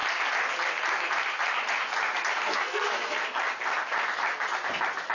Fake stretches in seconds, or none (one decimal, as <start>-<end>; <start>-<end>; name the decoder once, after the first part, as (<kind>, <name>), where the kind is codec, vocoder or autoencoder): 2.5-3.2 (codec, SNAC)